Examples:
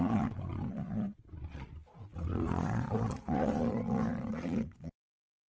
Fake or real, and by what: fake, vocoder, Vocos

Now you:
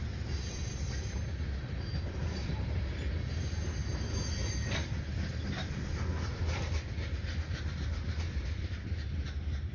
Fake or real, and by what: real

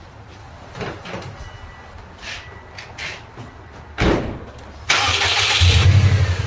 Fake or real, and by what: real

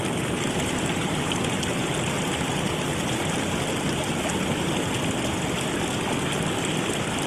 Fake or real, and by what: real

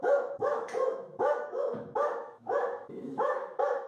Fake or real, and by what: fake, autoencoder, DAC-VAE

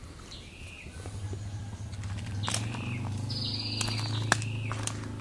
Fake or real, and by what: real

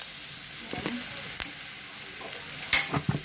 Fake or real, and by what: real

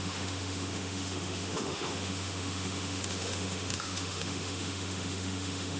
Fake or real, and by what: fake, autoencoder, DAC-VAE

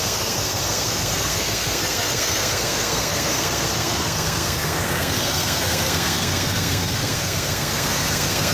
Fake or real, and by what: fake, codec, SNAC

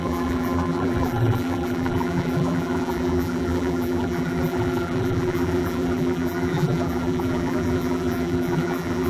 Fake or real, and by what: fake, vocoder, BigVGAN v2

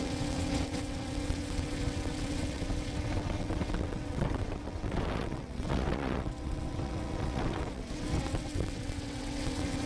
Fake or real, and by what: fake, vocoder, WaveNeXt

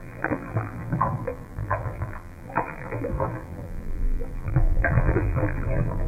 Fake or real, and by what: fake, vocoder, BigVGAN v2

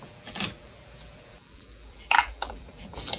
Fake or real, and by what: fake, vocoder, BigVGAN v2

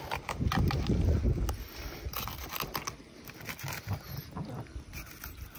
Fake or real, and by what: real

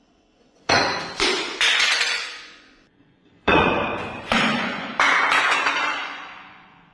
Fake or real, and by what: fake, vocoder, Vocos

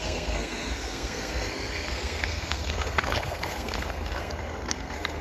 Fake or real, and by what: fake, codec, SNAC